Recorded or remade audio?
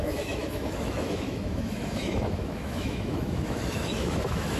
remade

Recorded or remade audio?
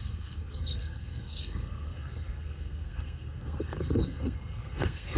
remade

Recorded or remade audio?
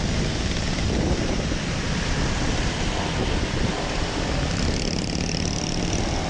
remade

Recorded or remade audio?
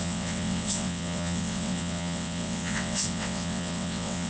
remade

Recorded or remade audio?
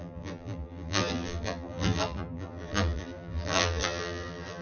remade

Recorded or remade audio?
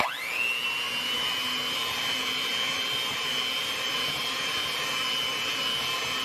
recorded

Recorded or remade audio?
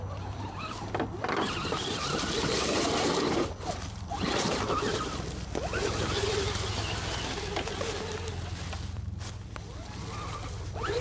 recorded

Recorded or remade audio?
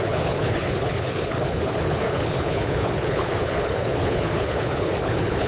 remade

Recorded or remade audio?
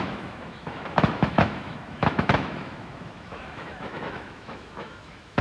remade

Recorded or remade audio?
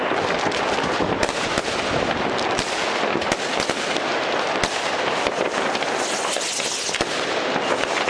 recorded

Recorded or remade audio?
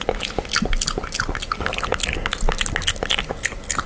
recorded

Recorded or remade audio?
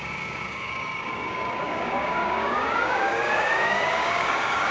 remade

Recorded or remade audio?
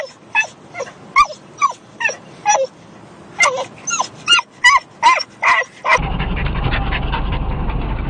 recorded